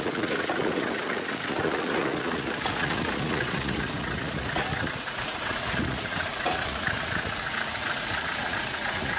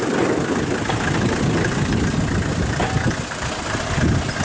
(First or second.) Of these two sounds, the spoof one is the first